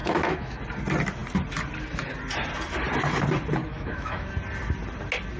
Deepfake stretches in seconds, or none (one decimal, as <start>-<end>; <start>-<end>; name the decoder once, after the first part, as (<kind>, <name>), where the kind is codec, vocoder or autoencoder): 0.0-0.6 (autoencoder, DAC-VAE); 3.6-4.3